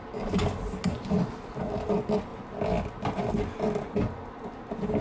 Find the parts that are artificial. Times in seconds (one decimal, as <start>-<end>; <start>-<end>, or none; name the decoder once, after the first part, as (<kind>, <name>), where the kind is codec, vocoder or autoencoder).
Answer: none